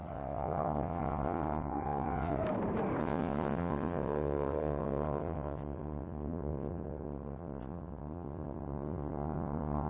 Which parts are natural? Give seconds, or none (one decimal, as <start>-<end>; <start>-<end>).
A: 2.4-3.0